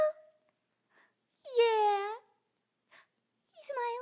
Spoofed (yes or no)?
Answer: no